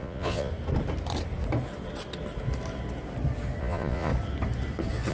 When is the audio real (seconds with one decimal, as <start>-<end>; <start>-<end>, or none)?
0.5-3.6; 4.1-5.1